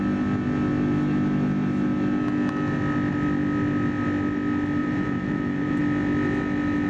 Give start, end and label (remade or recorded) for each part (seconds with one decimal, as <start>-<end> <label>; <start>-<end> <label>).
0.0-4.8 recorded; 4.8-5.8 remade; 5.8-6.9 recorded